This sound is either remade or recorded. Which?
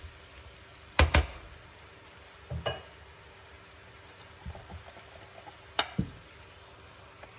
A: recorded